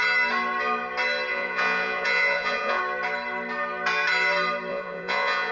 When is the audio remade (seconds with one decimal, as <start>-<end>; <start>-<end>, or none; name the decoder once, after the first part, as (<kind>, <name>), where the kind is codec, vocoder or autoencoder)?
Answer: 1.3-2.8 (vocoder, Vocos); 4.7-5.5